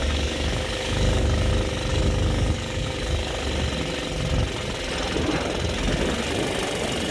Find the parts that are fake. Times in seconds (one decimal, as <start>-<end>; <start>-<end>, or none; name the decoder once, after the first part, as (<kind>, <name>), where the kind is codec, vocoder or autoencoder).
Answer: 0.0-1.5 (codec, DAC); 1.9-3.3